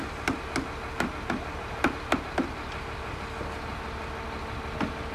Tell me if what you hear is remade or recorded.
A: recorded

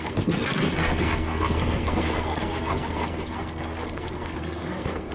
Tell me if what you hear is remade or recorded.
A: remade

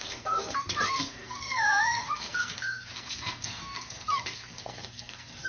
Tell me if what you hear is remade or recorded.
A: remade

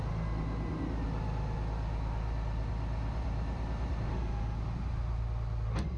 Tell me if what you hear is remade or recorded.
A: recorded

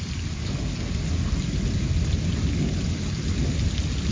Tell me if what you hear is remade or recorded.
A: recorded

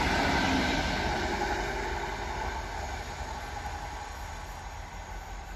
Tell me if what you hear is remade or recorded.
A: recorded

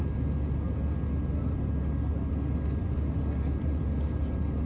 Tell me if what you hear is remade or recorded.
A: recorded